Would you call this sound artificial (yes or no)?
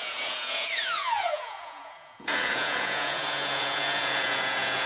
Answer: yes